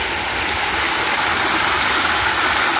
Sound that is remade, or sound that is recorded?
recorded